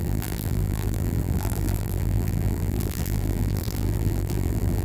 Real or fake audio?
fake